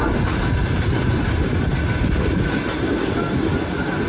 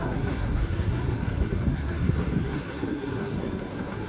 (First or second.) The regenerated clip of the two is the second